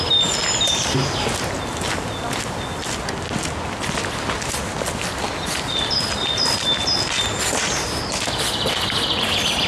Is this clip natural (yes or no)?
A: yes